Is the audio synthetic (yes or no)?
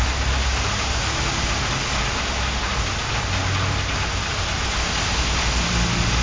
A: no